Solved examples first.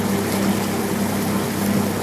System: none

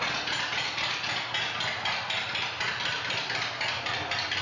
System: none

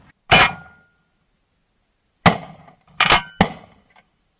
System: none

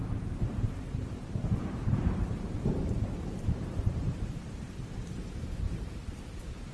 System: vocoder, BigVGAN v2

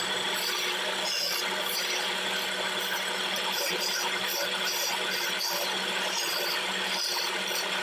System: none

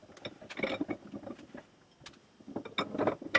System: none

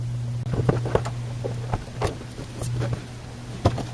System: vocoder, BigVGAN v2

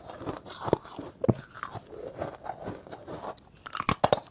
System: none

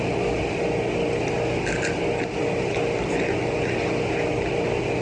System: none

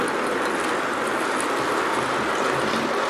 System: none